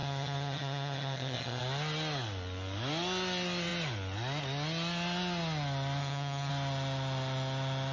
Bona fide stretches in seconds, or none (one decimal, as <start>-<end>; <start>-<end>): 1.6-6.0; 6.5-7.9